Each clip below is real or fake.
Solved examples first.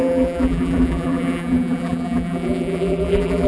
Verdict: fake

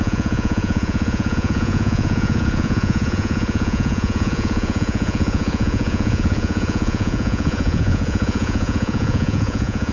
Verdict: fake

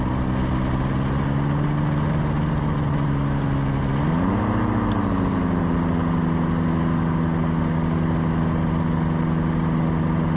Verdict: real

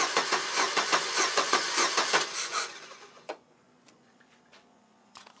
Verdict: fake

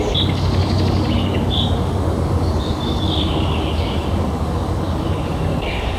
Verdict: fake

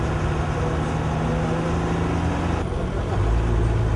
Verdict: real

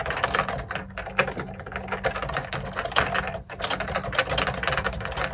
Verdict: real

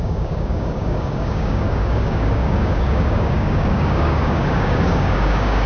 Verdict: fake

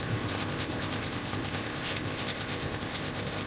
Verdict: fake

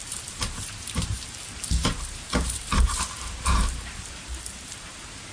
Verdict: fake